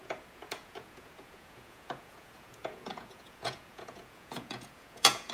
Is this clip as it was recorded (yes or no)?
no